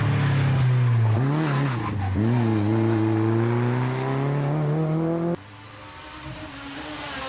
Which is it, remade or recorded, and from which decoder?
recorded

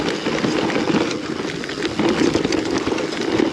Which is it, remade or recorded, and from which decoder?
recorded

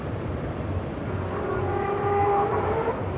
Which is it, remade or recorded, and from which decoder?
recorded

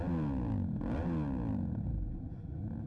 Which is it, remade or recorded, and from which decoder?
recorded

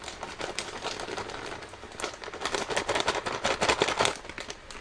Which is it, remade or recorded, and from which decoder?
recorded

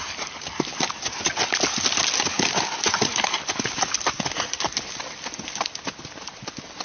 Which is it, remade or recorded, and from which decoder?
recorded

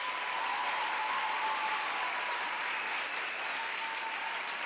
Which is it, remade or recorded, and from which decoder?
recorded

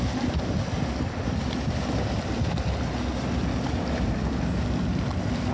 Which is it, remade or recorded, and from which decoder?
recorded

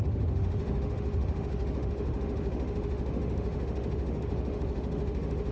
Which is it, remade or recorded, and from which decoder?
remade, autoencoder, DAC-VAE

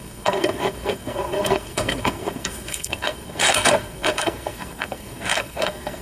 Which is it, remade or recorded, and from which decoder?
remade, codec, SNAC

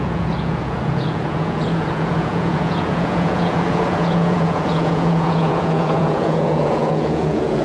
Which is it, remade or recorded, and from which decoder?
remade, vocoder, Vocos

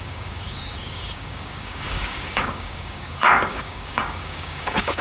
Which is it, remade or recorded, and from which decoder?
remade, codec, DAC